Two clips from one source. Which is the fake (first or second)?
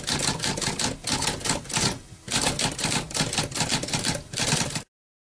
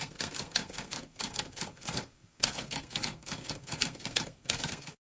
second